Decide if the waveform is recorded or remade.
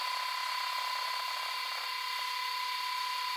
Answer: recorded